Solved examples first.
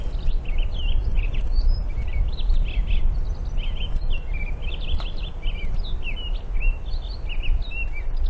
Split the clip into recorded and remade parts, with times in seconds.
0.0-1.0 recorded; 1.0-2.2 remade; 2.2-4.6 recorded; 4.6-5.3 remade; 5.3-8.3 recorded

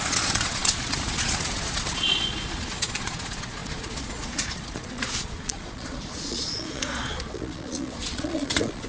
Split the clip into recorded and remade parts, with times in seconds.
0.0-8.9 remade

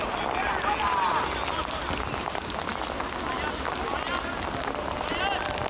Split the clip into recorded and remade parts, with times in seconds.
0.0-5.7 recorded

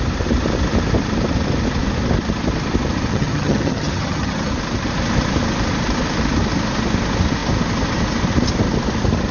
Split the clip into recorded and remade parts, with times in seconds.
0.0-3.1 recorded; 3.1-4.5 remade; 4.5-9.3 recorded

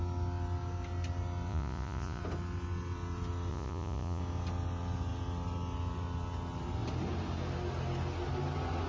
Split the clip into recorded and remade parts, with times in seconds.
0.0-1.5 recorded; 1.5-2.2 remade; 2.2-3.5 recorded; 3.5-4.2 remade; 4.2-8.9 recorded